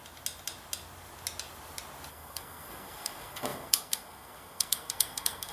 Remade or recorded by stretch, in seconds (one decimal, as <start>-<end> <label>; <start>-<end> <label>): 0.0-2.1 recorded; 2.1-5.5 remade